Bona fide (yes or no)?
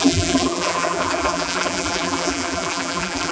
no